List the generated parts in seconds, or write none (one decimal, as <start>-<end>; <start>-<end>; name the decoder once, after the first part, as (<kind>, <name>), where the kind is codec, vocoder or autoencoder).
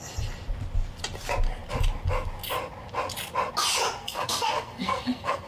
4.0-5.5 (codec, SNAC)